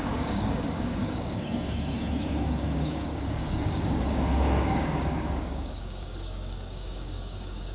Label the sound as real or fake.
fake